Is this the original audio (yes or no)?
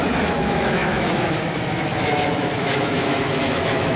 no